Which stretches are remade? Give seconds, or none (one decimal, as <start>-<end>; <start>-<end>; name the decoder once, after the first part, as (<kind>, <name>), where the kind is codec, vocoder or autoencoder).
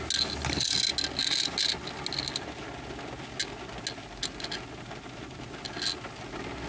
none